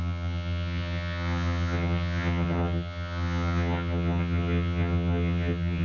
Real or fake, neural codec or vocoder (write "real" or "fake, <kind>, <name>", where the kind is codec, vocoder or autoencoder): fake, vocoder, HiFi-GAN